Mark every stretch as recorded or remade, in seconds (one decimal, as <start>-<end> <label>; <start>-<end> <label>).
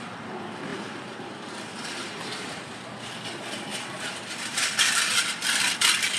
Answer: 0.0-0.7 recorded; 0.7-2.6 remade; 2.6-3.7 recorded; 3.7-4.6 remade; 4.6-6.2 recorded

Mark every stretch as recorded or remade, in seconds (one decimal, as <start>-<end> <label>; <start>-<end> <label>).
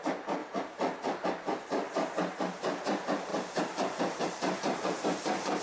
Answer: 0.0-5.6 remade